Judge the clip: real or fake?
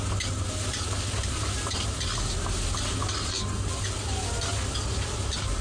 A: real